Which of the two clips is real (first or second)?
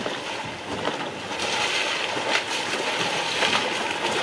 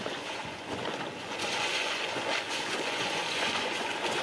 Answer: first